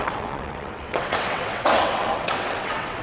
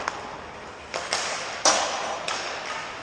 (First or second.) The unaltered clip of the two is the second